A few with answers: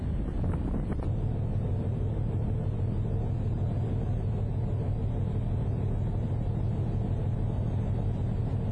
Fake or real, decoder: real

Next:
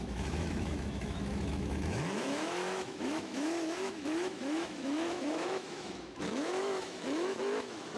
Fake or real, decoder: fake, autoencoder, DAC-VAE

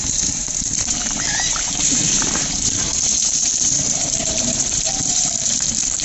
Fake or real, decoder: fake, vocoder, BigVGAN v2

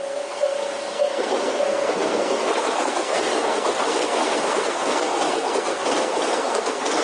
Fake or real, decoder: fake, codec, SNAC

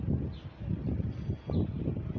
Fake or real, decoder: real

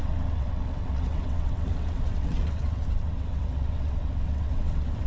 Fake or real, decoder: fake, vocoder, WaveNeXt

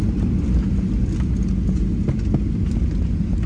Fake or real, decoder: real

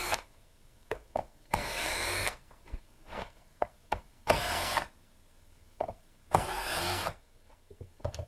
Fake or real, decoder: fake, codec, SNAC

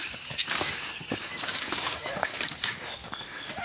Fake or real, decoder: fake, codec, DAC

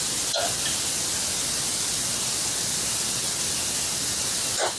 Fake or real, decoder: real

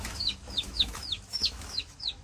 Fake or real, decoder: fake, autoencoder, DAC-VAE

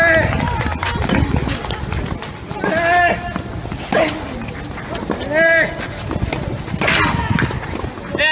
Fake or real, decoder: real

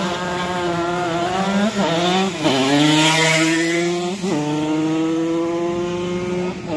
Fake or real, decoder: real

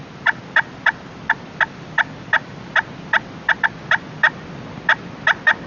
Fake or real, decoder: real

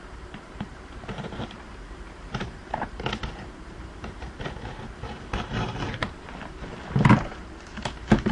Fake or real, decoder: fake, vocoder, BigVGAN v2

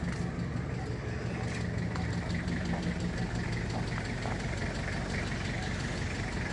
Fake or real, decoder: real